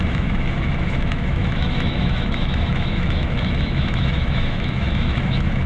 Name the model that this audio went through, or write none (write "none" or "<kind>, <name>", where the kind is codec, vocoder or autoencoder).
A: autoencoder, DAC-VAE